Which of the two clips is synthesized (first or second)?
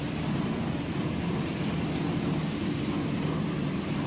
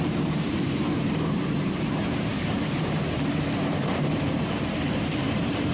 second